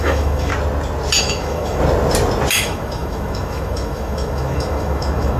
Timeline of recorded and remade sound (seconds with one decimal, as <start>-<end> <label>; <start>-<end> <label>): 0.0-0.5 remade; 0.5-1.2 recorded; 1.2-1.8 remade; 1.8-2.5 recorded; 2.5-5.4 remade

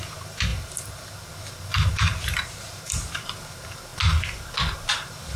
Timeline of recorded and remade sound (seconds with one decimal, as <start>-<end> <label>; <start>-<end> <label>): 0.0-3.9 remade; 3.9-4.9 recorded; 4.9-5.4 remade

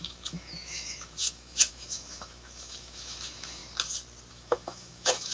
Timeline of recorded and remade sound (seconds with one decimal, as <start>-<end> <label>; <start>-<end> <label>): 0.0-3.6 remade; 3.6-4.3 recorded; 4.3-5.3 remade

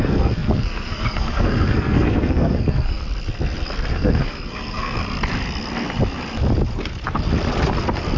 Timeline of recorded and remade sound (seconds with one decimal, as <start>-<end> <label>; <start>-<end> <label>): 0.0-3.0 remade; 3.0-3.9 recorded; 3.9-5.0 remade; 5.0-8.2 recorded